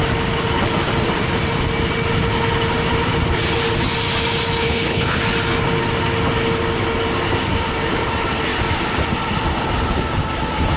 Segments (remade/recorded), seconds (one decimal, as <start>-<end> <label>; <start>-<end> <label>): 0.0-4.6 recorded; 4.6-5.2 remade; 5.2-10.8 recorded